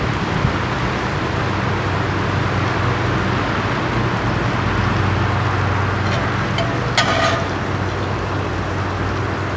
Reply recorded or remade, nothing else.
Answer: recorded